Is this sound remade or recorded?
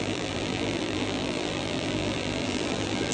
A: remade